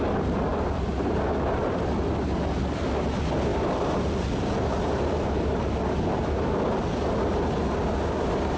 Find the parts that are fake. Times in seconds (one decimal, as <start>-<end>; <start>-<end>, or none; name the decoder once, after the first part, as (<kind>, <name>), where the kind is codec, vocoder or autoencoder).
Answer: 0.5-1.2 (vocoder, BigVGAN v2); 3.5-5.8